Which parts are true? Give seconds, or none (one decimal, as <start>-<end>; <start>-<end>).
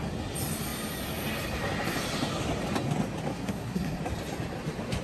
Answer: 0.0-3.3; 4.0-5.0